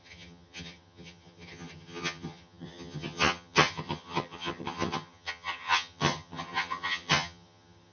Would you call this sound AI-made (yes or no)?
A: yes